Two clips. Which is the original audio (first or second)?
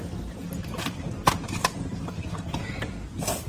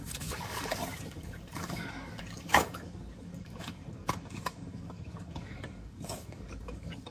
first